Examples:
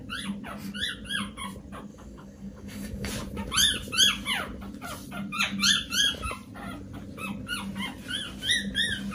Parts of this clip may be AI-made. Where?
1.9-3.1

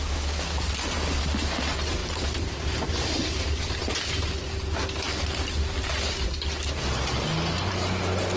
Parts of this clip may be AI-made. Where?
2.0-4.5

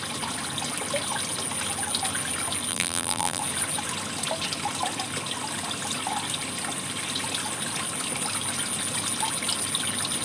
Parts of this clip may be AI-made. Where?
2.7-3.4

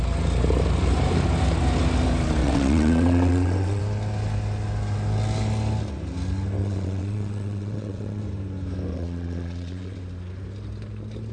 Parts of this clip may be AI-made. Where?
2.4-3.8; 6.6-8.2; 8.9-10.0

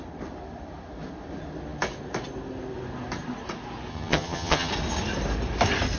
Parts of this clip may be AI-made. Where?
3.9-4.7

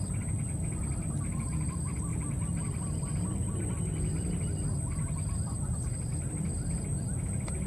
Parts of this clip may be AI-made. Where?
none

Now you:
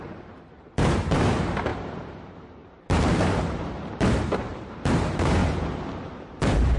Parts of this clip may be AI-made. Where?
0.0-5.4; 6.3-6.8